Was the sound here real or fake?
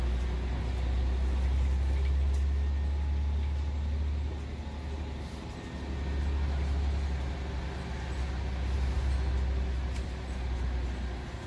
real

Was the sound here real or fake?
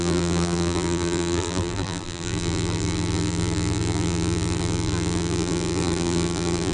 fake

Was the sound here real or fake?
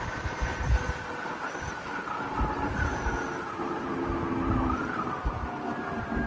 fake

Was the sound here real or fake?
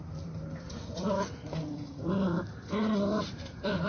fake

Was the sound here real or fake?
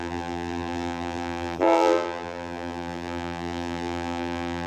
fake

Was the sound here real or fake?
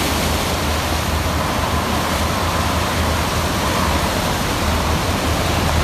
fake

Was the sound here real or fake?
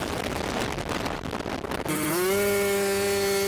real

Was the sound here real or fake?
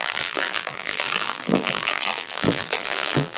fake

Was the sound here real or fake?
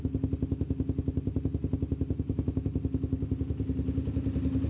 real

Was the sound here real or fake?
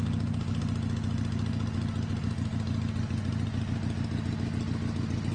real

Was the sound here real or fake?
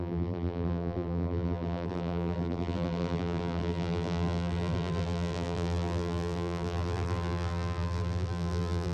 fake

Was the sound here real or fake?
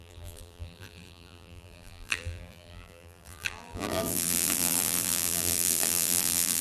fake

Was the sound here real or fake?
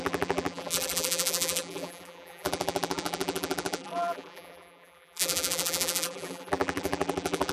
fake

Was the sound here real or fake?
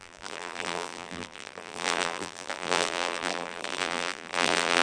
fake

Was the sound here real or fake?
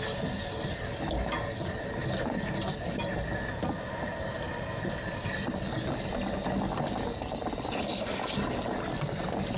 real